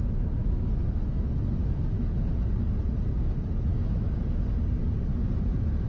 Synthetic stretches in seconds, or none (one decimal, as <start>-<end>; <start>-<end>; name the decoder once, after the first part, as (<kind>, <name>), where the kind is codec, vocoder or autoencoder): 0.4-2.3 (autoencoder, DAC-VAE); 3.7-4.2